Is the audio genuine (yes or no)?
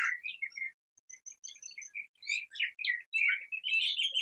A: yes